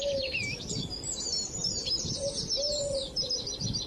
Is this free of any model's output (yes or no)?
yes